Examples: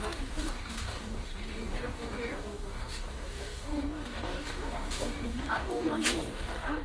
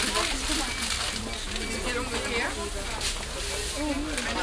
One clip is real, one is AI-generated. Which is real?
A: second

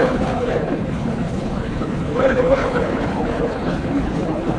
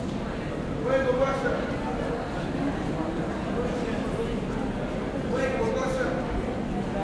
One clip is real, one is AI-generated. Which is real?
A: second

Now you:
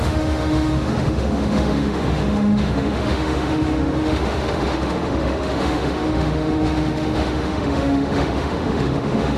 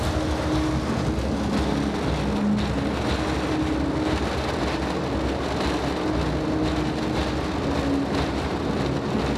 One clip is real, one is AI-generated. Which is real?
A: second